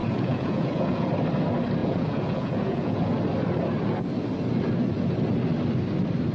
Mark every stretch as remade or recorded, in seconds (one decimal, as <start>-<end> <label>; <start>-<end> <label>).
0.0-1.1 remade; 1.1-1.8 recorded; 1.8-3.2 remade; 3.2-6.3 recorded